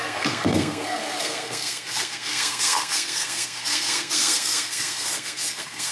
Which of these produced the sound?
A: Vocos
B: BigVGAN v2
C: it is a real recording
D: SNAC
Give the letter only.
D